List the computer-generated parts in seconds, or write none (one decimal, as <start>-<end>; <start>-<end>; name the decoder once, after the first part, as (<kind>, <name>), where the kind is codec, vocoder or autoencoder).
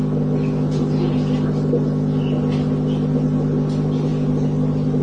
none